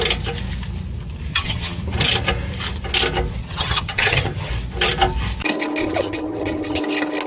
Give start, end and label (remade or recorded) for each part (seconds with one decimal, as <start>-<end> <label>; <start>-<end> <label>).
0.0-1.3 recorded; 1.3-1.8 remade; 1.8-3.4 recorded; 3.4-4.5 remade; 4.5-5.8 recorded; 5.8-6.8 remade; 6.8-7.3 recorded